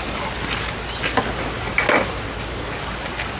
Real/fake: real